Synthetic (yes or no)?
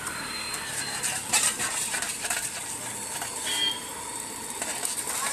yes